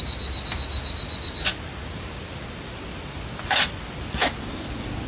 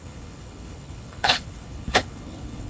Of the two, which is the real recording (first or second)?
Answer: first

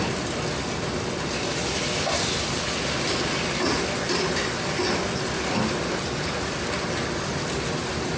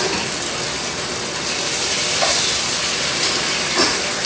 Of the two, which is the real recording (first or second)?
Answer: first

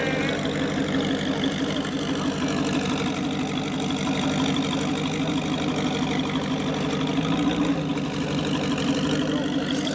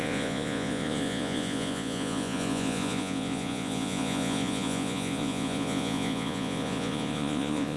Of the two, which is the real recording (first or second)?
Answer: first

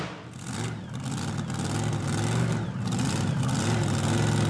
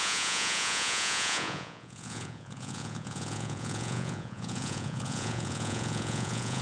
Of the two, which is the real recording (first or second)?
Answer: first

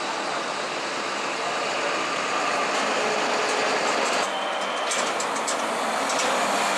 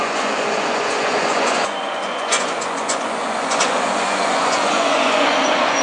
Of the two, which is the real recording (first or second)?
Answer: first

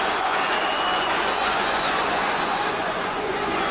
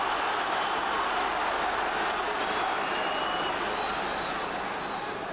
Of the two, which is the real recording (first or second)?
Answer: second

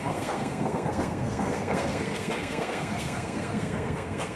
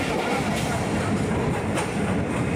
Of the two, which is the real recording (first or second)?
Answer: second